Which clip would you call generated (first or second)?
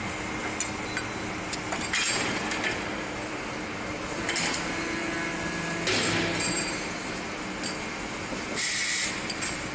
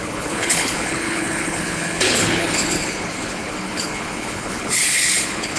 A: second